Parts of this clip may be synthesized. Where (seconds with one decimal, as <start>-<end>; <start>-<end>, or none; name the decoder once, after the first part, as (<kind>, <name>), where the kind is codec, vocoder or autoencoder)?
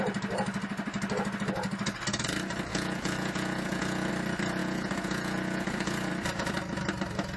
2.7-4.1 (vocoder, Vocos); 4.6-6.1